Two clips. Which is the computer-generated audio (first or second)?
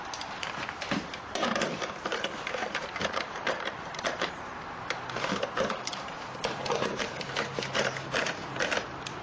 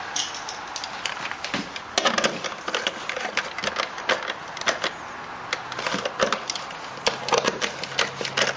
first